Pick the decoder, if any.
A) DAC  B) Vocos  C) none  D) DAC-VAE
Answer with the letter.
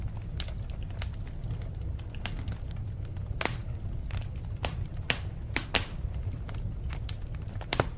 C